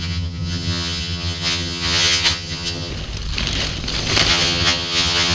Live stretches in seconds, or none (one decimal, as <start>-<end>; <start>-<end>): 2.9-4.3